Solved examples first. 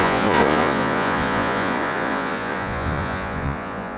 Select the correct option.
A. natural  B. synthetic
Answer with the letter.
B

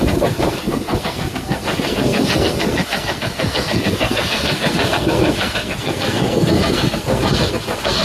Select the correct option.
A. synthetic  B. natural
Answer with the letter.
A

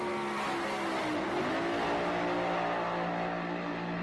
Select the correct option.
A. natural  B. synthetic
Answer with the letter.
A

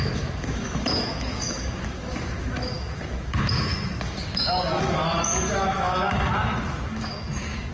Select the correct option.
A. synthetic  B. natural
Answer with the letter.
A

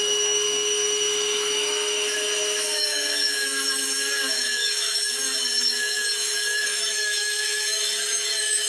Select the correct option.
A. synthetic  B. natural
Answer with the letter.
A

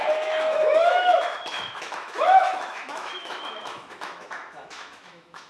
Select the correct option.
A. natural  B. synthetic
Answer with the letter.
B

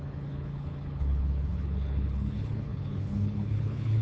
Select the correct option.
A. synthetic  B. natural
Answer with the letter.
A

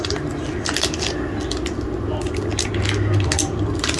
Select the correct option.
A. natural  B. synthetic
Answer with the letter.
A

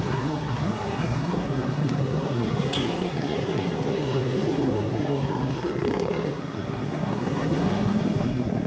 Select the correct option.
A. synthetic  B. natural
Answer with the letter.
A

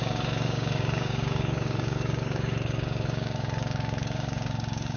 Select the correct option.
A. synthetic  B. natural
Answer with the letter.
A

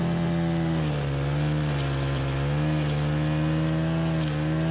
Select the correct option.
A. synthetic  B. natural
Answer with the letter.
B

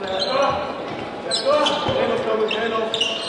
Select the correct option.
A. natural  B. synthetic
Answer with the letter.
A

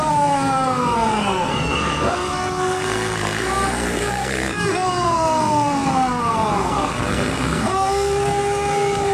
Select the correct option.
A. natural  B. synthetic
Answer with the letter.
B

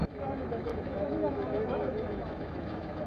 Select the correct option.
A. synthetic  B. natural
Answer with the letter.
A